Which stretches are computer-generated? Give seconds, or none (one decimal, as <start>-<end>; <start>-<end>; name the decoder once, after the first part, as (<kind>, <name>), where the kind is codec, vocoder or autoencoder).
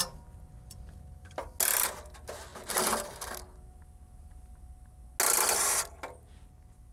none